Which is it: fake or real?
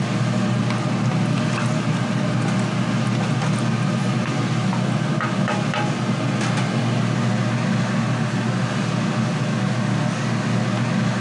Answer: real